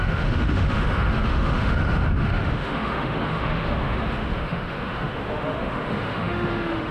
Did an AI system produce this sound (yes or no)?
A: yes